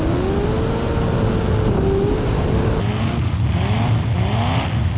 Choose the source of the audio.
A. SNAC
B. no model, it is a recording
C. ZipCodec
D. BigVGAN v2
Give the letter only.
B